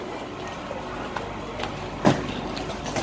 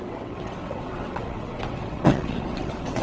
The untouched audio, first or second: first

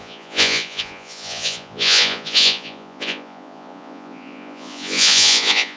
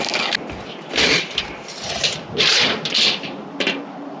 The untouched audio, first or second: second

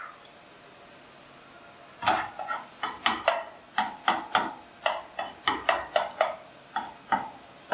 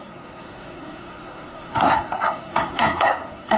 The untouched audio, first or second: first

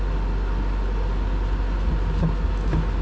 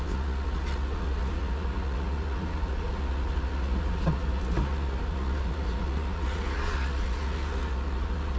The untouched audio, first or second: first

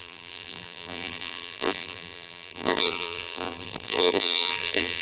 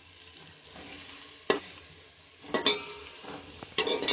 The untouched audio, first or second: second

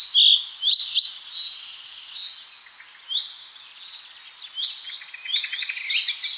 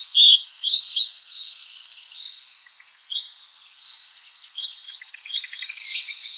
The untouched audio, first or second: first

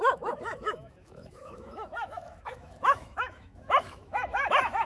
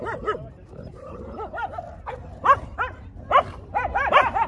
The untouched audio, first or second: second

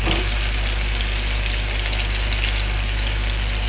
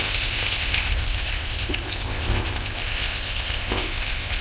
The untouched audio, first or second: first